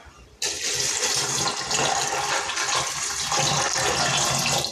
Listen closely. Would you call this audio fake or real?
real